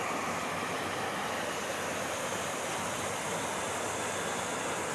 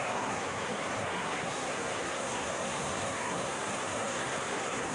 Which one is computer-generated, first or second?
second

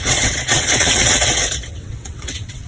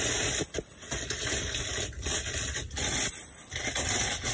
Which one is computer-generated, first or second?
first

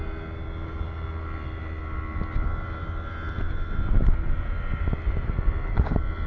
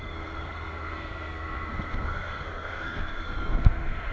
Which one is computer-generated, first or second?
second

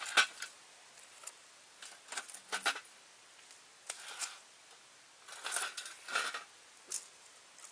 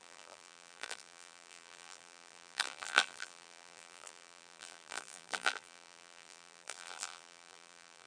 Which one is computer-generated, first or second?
second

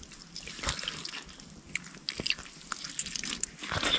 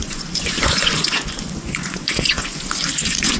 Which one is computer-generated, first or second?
second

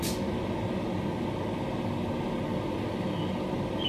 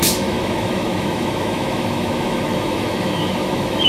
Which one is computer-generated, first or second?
second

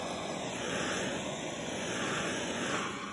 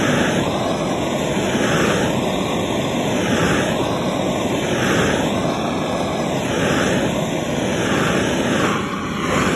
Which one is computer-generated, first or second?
first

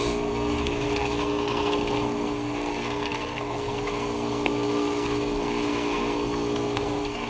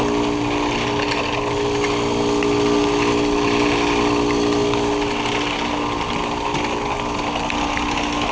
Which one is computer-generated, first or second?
first